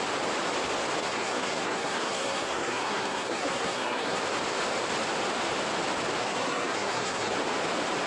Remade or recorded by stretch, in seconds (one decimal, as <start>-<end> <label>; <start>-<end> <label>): 0.0-1.0 recorded; 1.0-4.2 remade; 4.2-6.2 recorded; 6.2-7.3 remade; 7.3-8.1 recorded